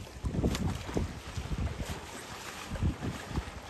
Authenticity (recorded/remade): recorded